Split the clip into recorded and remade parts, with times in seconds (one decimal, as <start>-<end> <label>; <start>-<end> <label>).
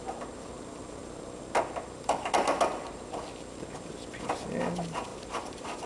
0.0-5.1 recorded; 5.1-5.9 remade